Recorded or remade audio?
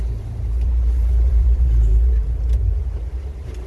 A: remade